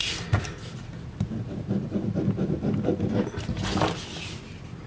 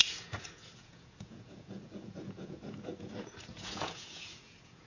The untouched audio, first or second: first